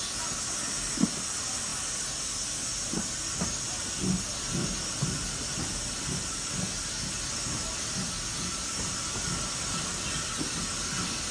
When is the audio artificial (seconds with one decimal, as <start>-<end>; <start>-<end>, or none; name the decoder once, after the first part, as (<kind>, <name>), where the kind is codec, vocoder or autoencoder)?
none